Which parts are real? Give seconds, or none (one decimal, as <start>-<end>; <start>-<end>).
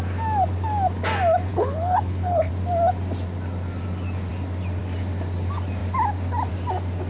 0.0-1.5; 2.5-7.1